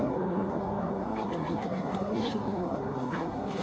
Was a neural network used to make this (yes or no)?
yes